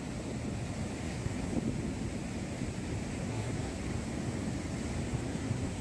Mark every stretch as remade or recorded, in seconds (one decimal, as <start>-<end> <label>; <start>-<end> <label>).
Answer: 0.0-1.0 recorded; 1.0-1.5 remade; 1.5-3.2 recorded; 3.2-3.8 remade; 3.8-5.1 recorded; 5.1-5.8 remade

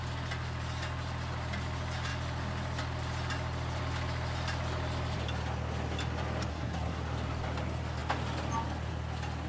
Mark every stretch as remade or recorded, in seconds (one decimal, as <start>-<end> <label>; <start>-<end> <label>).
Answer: 0.0-6.5 recorded; 6.5-7.0 remade; 7.0-9.5 recorded